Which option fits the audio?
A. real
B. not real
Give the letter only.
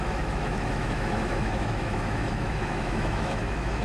B